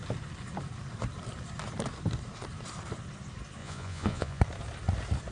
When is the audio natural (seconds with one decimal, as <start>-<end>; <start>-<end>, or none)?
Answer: 0.0-3.6; 4.4-5.3